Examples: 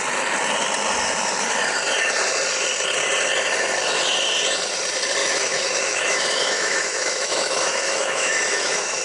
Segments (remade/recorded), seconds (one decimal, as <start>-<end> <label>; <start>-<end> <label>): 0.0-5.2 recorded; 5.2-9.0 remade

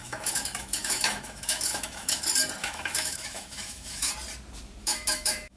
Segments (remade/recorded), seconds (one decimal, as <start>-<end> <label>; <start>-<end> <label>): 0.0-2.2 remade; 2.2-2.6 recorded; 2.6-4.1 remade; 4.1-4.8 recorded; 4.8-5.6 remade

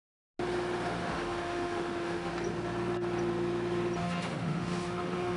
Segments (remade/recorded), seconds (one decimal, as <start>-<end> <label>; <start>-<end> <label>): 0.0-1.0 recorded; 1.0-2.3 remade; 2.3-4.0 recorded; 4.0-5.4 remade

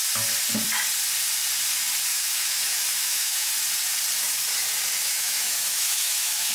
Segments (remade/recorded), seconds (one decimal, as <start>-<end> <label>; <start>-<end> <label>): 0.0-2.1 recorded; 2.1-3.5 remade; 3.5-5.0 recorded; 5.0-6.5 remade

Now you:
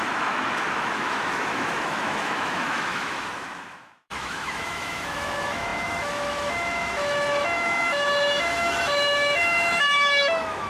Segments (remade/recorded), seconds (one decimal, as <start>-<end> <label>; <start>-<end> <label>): 0.0-10.7 remade

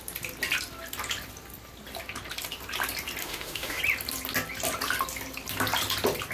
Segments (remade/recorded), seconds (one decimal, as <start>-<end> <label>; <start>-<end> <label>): 0.0-3.2 recorded; 3.2-3.8 remade; 3.8-6.3 recorded